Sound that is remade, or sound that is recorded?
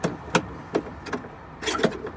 recorded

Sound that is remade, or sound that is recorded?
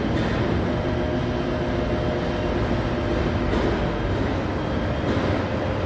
recorded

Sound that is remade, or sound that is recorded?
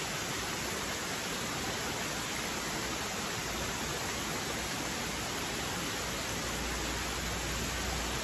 recorded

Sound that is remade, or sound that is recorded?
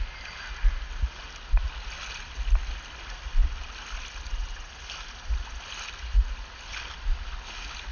recorded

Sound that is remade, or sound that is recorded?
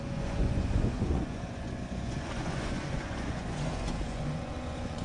remade